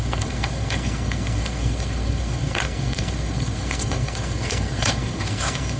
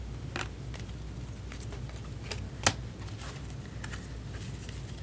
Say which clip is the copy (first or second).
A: first